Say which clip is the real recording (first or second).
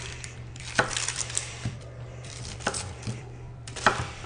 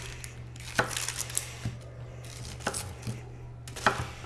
second